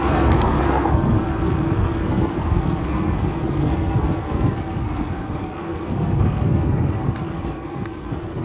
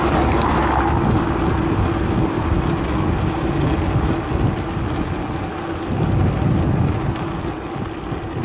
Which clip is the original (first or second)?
second